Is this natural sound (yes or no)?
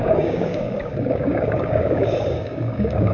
no